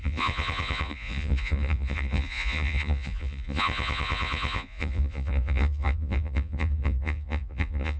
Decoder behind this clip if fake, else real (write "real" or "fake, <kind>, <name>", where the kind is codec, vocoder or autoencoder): fake, vocoder, Vocos